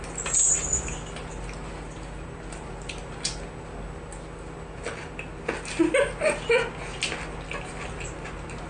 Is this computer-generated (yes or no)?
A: no